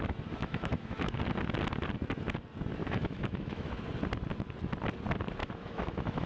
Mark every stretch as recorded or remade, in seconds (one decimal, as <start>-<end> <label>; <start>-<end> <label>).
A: 0.0-0.4 recorded; 0.4-1.2 remade; 1.2-2.8 recorded; 2.8-3.7 remade; 3.7-5.4 recorded; 5.4-6.3 remade